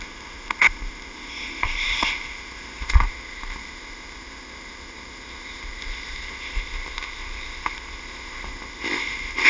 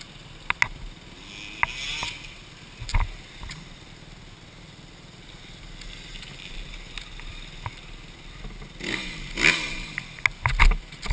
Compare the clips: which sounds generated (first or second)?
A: first